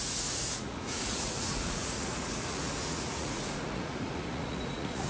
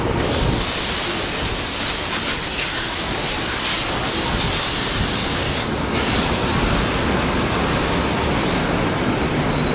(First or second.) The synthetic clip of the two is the first